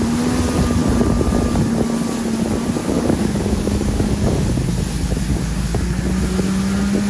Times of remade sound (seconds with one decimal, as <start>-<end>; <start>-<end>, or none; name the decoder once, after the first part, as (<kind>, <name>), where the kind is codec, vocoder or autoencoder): 2.8-4.7 (codec, DAC); 5.3-6.0